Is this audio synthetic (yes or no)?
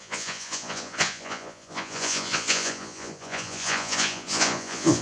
yes